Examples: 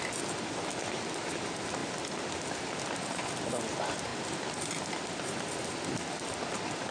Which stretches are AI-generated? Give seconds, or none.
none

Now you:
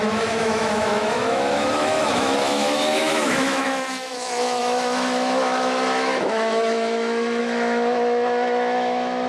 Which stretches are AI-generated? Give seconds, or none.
0.0-9.3 (autoencoder, DAC-VAE)

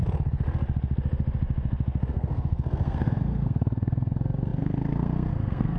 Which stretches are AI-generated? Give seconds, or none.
2.1-5.8 (codec, SNAC)